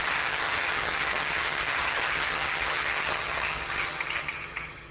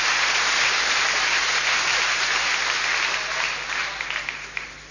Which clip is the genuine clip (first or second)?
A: second